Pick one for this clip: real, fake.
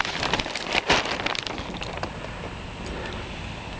fake